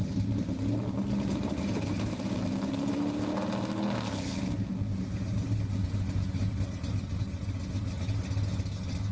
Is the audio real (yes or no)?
yes